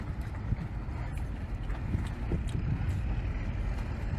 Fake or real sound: real